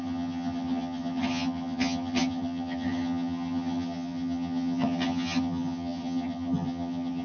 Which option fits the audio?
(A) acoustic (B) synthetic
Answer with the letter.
B